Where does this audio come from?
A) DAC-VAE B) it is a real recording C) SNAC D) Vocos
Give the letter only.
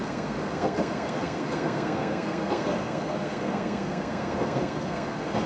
C